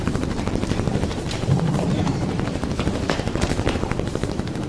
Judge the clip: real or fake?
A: fake